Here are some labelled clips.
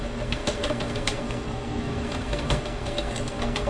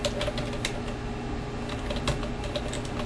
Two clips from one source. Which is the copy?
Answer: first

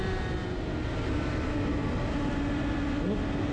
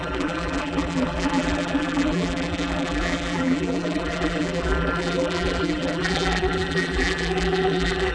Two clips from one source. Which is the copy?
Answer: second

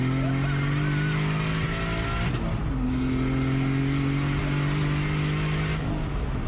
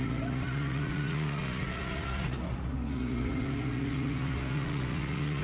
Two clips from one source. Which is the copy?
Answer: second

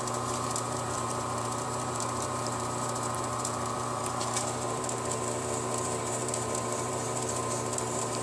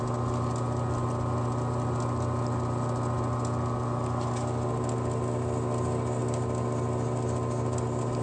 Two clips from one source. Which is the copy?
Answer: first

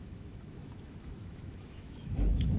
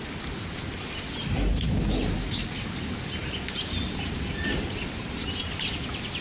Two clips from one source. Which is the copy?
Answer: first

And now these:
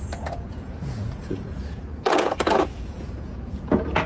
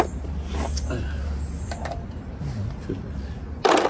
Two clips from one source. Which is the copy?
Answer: first